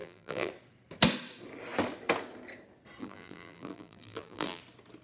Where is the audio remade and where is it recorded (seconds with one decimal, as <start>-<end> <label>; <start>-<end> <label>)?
0.0-0.5 remade; 0.5-3.0 recorded; 3.0-4.6 remade; 4.6-5.0 recorded